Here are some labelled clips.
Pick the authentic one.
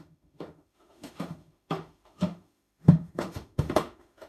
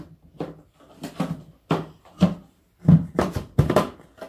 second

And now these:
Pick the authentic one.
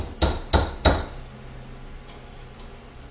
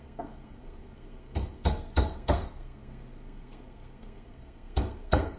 first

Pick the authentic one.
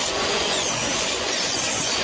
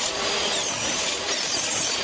second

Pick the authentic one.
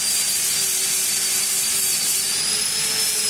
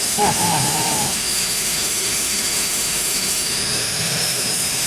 first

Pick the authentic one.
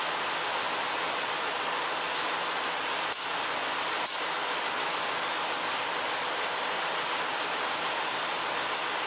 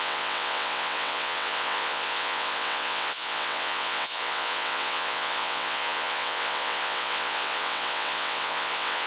first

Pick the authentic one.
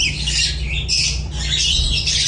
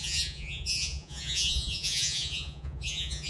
first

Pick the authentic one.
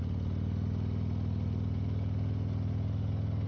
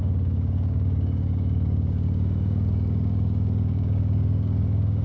first